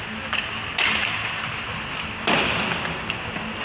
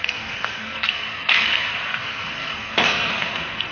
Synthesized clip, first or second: second